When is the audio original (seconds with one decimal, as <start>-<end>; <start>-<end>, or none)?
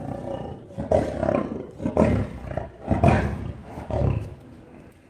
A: 0.0-3.6; 4.4-5.1